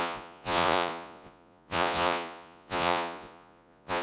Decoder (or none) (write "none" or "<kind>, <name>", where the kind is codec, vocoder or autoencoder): vocoder, Vocos